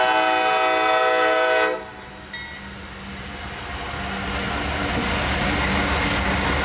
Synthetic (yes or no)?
no